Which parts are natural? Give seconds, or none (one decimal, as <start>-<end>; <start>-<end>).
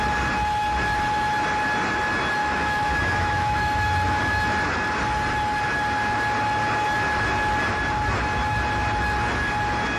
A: 0.0-2.4; 4.4-10.0